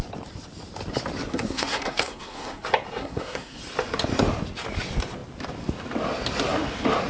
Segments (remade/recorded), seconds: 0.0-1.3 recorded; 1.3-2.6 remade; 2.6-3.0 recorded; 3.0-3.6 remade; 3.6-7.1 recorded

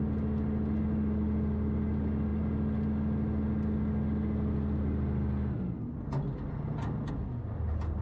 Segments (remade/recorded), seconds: 0.0-8.0 recorded

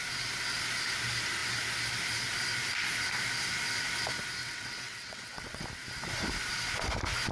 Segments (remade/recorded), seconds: 0.0-4.4 recorded; 4.4-5.6 remade; 5.6-7.3 recorded